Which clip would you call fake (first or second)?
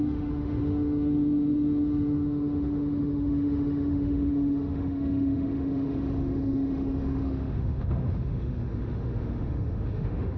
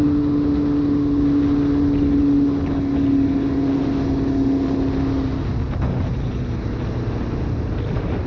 first